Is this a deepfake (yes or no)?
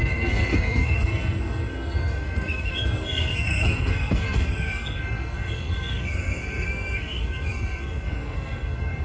yes